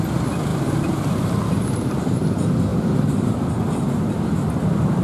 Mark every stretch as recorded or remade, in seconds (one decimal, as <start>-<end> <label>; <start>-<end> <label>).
0.0-0.5 recorded; 0.5-1.3 remade; 1.3-2.7 recorded; 2.7-3.5 remade; 3.5-5.0 recorded